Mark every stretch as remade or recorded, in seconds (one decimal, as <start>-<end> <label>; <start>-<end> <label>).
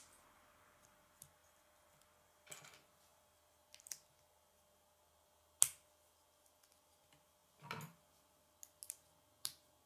0.0-9.9 recorded